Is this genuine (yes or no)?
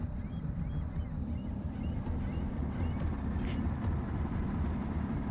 yes